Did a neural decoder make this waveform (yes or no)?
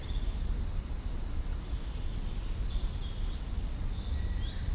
no